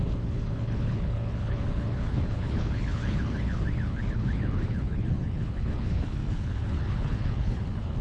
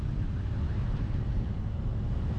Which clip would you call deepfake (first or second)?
first